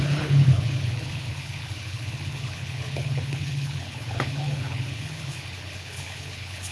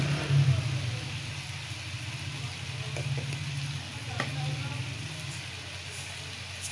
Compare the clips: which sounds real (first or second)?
second